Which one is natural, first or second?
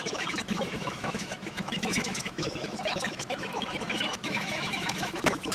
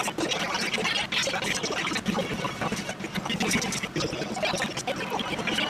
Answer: second